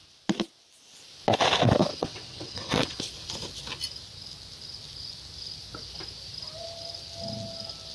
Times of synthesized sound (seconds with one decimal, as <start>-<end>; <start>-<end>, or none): 1.9-3.0

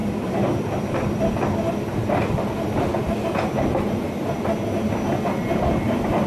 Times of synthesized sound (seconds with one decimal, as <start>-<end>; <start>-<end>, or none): 0.0-2.9; 5.3-6.3

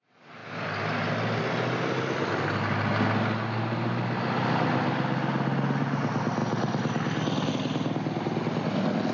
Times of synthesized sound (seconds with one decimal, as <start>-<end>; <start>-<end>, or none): none

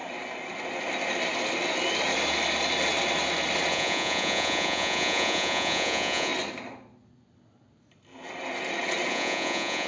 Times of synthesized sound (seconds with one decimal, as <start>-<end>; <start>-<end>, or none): 3.7-6.3; 9.1-9.9

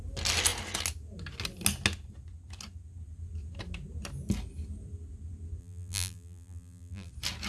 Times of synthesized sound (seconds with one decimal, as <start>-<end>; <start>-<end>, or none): 5.6-7.1

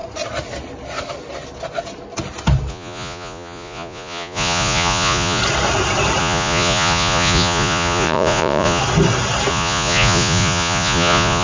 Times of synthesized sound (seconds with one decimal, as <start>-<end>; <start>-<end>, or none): 2.7-5.4; 6.2-8.8; 9.5-11.4